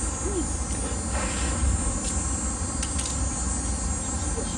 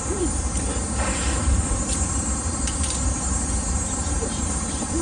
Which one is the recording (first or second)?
first